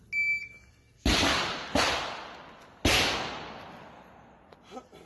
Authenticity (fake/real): real